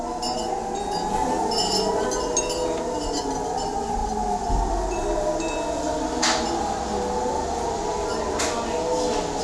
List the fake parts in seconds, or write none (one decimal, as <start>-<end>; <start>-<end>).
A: none